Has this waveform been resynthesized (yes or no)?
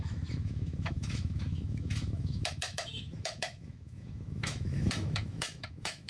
yes